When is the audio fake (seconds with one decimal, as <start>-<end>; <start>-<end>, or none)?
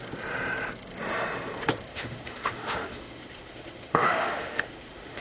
1.9-5.2